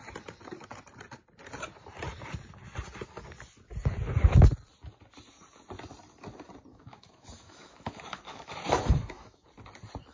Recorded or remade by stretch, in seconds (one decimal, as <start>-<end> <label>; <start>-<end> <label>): 0.0-6.7 recorded; 6.7-9.5 remade; 9.5-10.1 recorded